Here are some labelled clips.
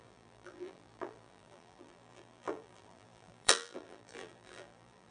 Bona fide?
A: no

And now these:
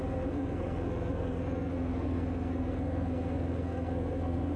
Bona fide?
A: no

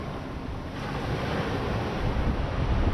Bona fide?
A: yes